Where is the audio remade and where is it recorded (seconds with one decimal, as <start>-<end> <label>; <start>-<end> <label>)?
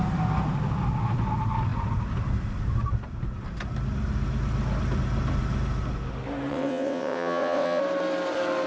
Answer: 0.0-6.5 recorded; 6.5-7.8 remade; 7.8-8.7 recorded